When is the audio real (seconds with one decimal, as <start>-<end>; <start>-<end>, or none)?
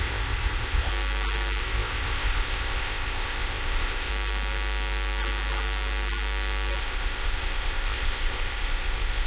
0.9-1.6; 4.1-6.8